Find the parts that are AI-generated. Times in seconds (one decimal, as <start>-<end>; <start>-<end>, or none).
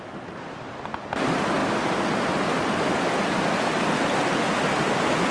none